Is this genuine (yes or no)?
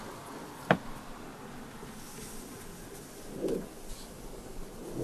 yes